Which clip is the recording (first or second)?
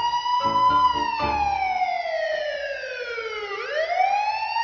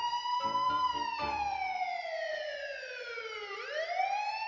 first